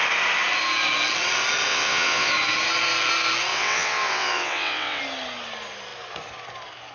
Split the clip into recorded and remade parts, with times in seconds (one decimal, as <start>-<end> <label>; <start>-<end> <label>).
0.0-1.7 recorded; 1.7-2.3 remade; 2.3-3.5 recorded; 3.5-5.0 remade; 5.0-6.9 recorded